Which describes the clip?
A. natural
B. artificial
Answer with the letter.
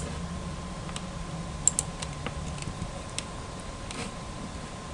A